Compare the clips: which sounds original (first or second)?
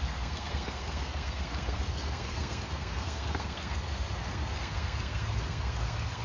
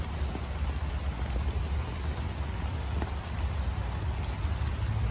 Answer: second